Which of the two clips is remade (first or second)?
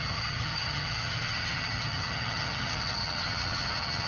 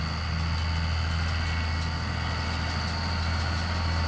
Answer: first